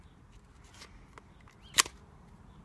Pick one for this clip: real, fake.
real